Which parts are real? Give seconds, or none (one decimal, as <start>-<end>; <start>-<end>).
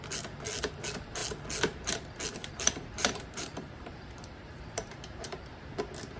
0.0-2.4; 5.5-6.2